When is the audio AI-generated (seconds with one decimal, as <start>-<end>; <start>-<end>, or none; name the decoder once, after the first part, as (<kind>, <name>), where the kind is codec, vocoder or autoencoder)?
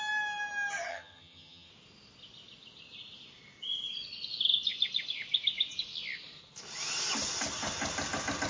0.9-1.7 (vocoder, HiFi-GAN)